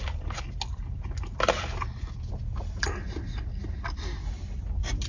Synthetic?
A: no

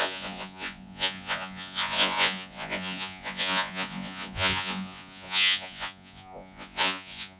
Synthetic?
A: yes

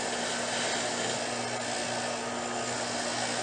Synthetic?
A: no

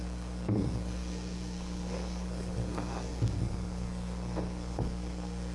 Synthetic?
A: yes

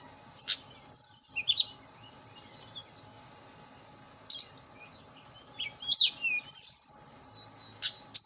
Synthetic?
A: no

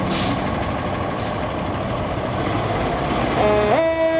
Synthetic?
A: no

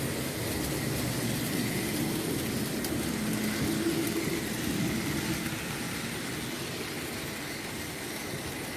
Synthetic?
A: no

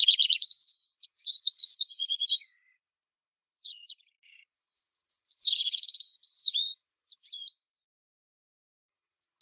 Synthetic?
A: yes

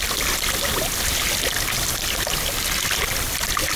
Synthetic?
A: no